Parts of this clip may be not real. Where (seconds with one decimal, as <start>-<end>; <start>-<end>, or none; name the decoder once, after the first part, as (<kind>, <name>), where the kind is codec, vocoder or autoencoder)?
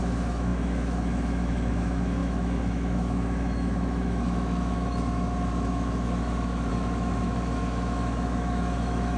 0.0-9.2 (autoencoder, DAC-VAE)